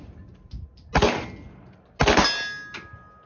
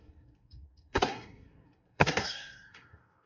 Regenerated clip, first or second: second